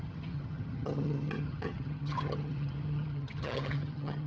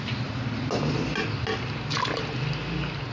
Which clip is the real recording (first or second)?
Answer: second